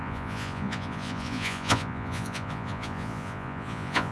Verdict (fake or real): fake